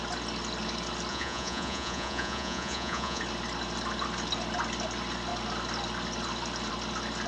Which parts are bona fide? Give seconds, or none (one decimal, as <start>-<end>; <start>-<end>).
0.0-1.1; 3.2-7.3